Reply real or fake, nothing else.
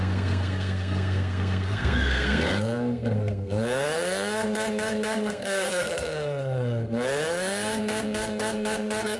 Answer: fake